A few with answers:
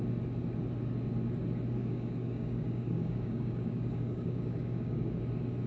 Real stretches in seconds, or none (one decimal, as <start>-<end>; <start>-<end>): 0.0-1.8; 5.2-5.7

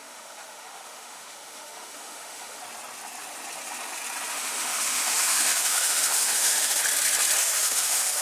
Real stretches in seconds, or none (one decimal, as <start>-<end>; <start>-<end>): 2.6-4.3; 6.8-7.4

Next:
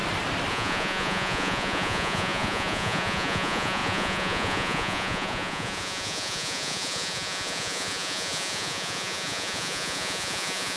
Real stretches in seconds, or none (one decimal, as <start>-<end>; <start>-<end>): 0.0-0.5